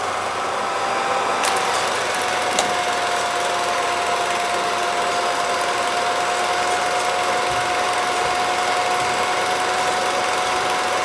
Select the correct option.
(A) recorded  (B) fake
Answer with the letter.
A